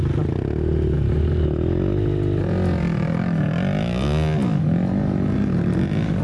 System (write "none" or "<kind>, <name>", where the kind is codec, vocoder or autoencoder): none